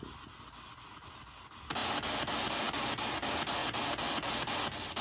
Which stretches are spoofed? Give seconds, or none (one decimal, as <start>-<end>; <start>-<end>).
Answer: none